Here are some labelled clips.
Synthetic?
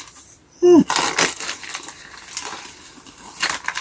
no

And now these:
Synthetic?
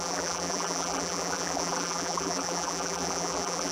yes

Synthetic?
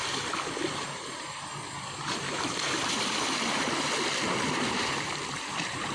yes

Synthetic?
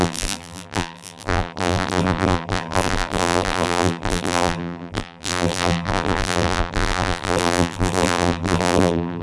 yes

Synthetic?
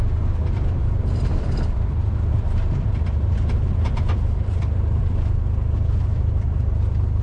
yes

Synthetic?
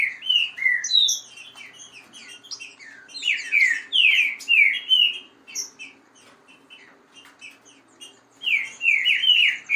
no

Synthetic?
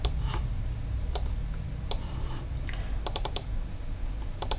yes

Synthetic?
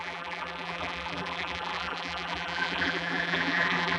yes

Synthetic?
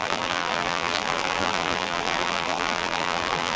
yes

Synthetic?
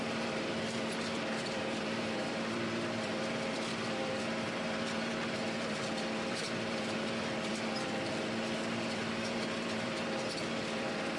yes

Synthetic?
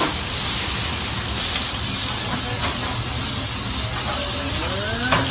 no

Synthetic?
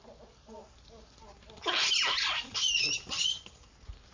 no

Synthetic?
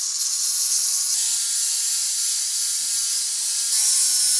no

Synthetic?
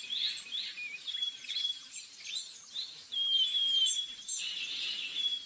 yes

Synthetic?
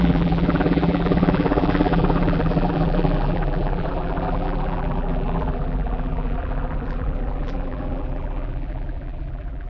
yes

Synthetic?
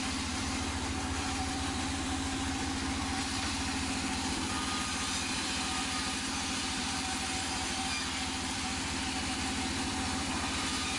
yes